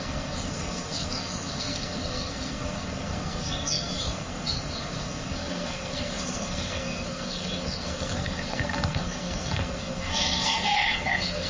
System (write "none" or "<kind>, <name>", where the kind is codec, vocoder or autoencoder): codec, SNAC